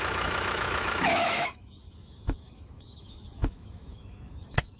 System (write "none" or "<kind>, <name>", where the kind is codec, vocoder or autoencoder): autoencoder, DAC-VAE